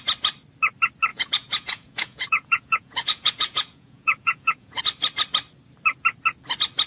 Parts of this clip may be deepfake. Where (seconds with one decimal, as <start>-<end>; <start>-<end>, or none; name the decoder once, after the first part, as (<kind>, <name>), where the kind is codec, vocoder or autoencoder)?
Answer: 1.1-4.8 (vocoder, Vocos)